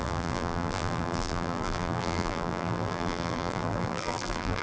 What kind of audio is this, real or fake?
fake